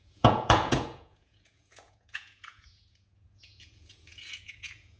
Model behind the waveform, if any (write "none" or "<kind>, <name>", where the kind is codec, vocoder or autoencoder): vocoder, Vocos